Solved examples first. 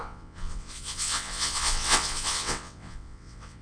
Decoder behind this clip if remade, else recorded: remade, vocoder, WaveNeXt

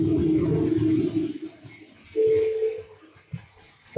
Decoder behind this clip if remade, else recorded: recorded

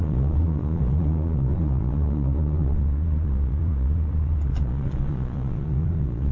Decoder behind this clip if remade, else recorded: remade, vocoder, Vocos